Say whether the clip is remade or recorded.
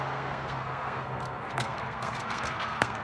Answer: remade